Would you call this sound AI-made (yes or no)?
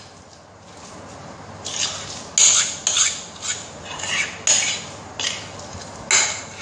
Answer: no